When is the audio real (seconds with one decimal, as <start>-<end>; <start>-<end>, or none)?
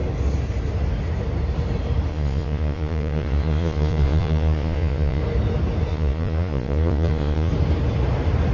0.0-2.1; 5.2-5.9; 7.5-8.5